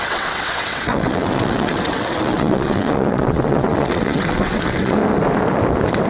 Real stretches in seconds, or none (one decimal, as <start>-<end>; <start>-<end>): 5.0-6.1